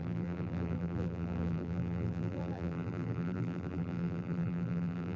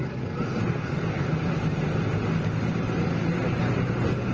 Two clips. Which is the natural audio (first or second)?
second